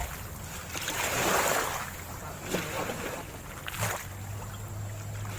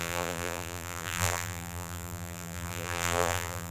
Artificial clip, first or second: second